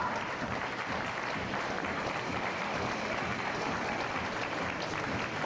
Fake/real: fake